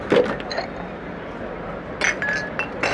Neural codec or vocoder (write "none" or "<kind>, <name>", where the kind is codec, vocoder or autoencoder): none